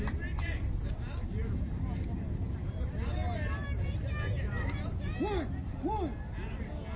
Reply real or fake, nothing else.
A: real